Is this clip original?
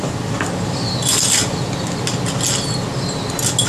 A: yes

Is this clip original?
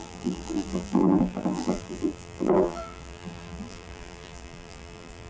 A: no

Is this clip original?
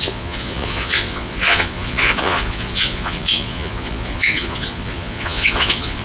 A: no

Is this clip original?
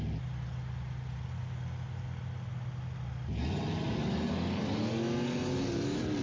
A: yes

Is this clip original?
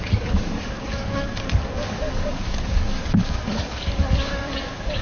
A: no